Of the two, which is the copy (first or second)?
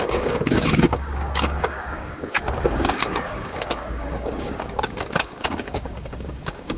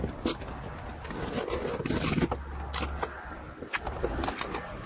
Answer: first